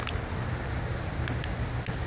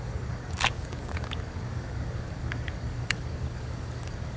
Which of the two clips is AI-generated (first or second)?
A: second